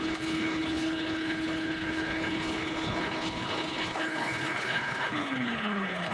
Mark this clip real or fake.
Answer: fake